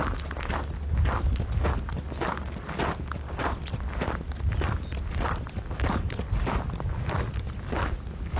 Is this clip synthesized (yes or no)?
no